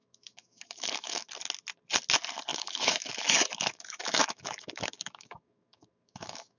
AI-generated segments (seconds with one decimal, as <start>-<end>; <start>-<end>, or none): 0.0-1.3; 2.5-6.6